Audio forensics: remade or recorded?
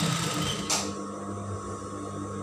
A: recorded